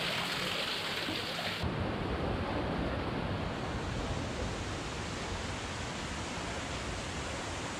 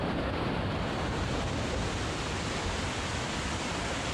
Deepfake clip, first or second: second